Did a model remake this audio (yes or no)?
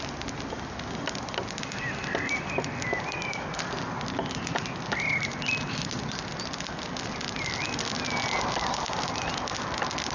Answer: no